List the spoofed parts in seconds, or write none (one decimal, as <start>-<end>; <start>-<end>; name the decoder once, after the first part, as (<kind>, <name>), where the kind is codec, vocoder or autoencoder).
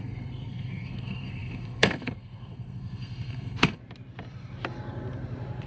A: 0.0-3.8 (codec, SNAC)